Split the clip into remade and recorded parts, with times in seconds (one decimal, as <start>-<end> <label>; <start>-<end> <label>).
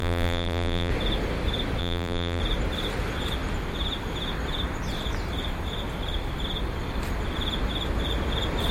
0.0-0.9 remade; 0.9-1.8 recorded; 1.8-2.4 remade; 2.4-8.7 recorded